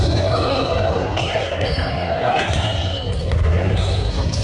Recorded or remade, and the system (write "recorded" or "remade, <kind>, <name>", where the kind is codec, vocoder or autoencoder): remade, codec, SNAC